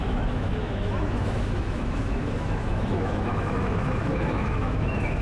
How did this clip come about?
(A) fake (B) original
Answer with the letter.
A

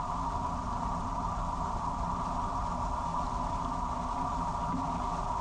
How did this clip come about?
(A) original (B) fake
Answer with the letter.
A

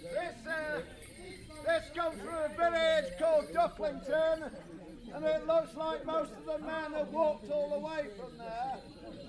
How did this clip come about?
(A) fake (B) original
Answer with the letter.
B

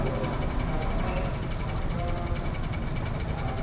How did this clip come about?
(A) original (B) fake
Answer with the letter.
A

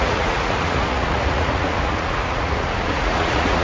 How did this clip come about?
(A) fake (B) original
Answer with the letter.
A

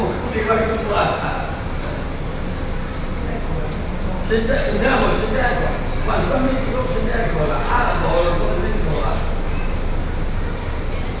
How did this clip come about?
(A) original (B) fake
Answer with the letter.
A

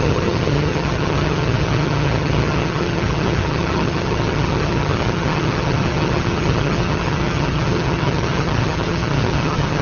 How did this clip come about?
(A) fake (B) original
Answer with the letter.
A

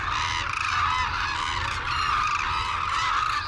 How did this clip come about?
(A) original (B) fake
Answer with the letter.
A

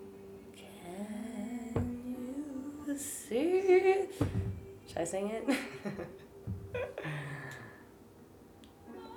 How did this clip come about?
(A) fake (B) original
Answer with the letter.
B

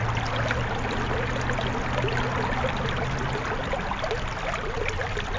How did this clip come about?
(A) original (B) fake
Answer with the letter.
A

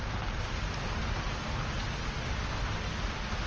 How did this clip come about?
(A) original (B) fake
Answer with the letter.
A